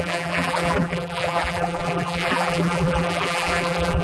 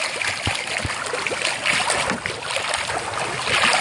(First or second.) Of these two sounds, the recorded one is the second